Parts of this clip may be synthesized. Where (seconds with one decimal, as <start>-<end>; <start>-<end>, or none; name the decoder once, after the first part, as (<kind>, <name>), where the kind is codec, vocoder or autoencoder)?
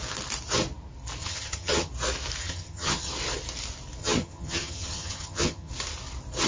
1.2-1.9 (vocoder, HiFi-GAN); 2.4-3.1; 4.0-5.7